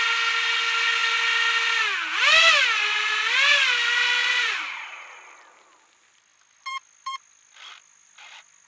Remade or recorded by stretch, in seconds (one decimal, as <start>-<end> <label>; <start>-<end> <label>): 0.0-4.2 recorded; 4.2-5.2 remade; 5.2-8.7 recorded